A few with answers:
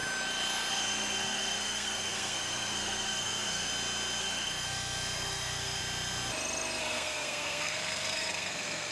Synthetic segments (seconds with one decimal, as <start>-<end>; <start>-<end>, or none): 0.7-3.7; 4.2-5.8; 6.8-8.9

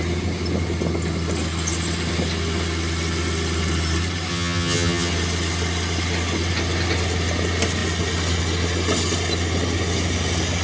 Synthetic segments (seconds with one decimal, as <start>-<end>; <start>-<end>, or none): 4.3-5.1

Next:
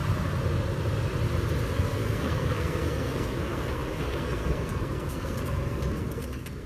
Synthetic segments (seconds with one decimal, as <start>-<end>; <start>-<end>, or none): 1.7-6.7

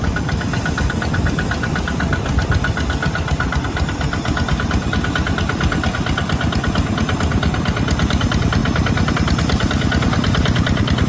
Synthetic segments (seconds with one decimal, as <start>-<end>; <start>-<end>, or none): none

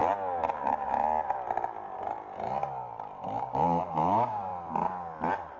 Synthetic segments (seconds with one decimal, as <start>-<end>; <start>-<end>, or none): 0.5-0.9; 3.4-4.5